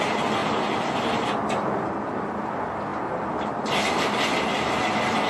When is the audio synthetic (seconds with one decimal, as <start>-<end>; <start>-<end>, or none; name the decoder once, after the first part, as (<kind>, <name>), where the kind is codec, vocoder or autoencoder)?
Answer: none